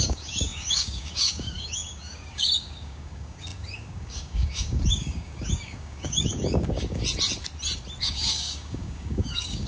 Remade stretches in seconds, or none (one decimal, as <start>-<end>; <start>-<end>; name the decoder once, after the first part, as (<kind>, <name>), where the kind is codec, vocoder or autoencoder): 0.0-7.0 (codec, DAC); 8.0-9.7